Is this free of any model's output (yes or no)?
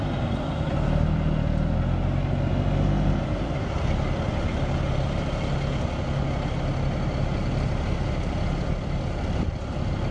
yes